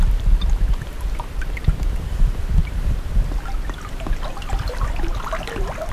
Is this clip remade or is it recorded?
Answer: remade